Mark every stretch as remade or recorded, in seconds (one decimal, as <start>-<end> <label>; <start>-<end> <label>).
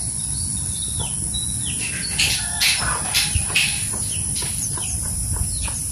0.0-5.9 recorded